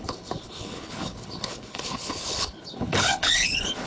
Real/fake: fake